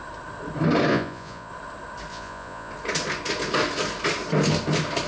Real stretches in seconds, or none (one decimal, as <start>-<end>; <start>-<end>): 0.0-0.9; 1.5-2.1; 2.7-5.1